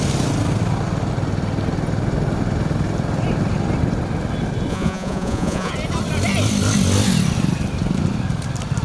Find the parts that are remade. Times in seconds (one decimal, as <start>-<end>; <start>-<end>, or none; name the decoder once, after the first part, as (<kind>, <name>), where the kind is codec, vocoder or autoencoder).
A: 4.7-5.7 (vocoder, Vocos)